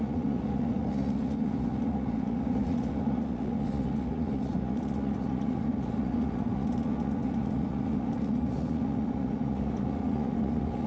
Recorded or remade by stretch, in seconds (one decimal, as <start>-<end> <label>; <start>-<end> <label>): 0.0-10.9 remade